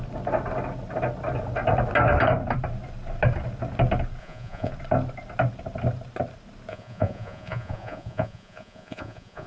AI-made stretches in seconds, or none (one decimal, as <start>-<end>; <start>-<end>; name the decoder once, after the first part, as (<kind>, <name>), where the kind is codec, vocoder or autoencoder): 4.2-4.7 (vocoder, Vocos); 6.7-9.5